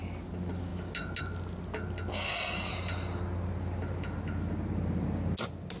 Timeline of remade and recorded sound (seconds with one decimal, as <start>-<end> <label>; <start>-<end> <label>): 0.0-2.1 recorded; 2.1-2.7 remade; 2.7-5.8 recorded